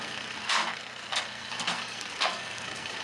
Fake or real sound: fake